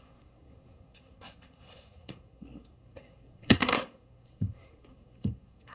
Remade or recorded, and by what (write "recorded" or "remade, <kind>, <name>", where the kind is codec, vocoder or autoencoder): remade, codec, SNAC